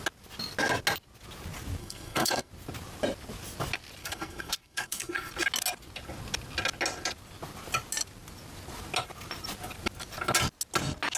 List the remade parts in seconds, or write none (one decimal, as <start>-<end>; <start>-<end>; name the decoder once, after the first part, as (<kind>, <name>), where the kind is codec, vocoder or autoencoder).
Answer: 1.8-2.5 (codec, SNAC); 4.0-5.3